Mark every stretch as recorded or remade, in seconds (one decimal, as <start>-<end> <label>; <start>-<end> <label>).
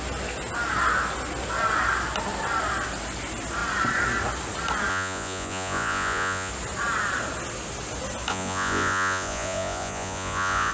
0.0-4.9 recorded; 4.9-6.5 remade; 6.5-8.3 recorded; 8.3-10.7 remade